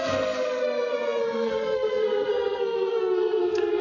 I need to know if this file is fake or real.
fake